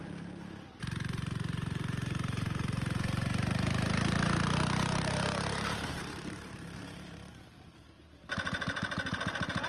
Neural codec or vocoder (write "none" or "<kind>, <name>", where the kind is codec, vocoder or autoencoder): vocoder, BigVGAN v2